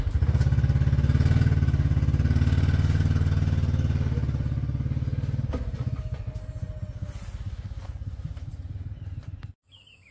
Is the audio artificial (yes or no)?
no